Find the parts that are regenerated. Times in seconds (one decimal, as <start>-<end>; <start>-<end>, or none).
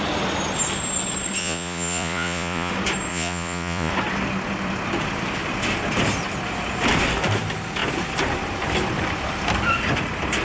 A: 1.4-2.7; 3.1-3.9